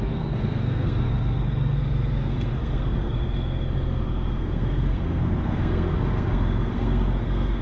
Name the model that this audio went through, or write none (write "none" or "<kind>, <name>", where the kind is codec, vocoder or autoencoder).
codec, SNAC